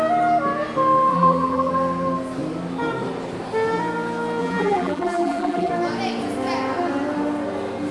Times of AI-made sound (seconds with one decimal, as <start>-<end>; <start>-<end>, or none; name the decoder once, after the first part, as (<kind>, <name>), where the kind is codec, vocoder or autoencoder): 1.1-1.7 (vocoder, BigVGAN v2); 4.4-5.7